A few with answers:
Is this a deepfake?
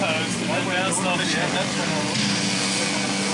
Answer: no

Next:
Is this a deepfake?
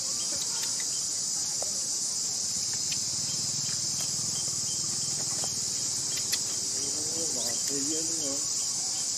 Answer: no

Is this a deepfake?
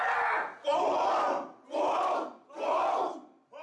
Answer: no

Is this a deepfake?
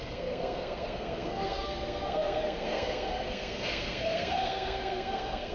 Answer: yes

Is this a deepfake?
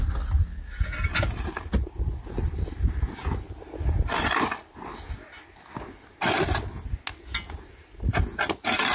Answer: no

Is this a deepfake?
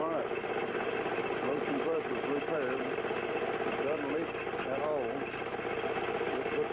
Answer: no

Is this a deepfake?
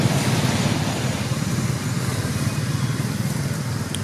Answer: no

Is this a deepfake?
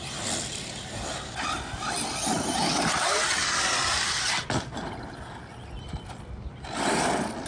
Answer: no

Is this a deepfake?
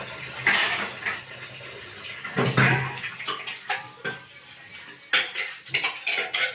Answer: no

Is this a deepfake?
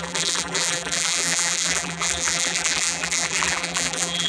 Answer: yes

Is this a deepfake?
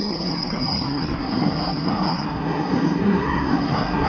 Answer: yes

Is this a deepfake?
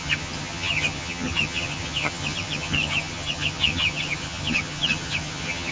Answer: yes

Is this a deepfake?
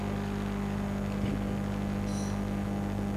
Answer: no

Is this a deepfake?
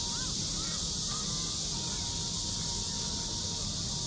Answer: no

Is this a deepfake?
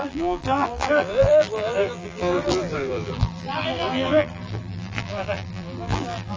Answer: yes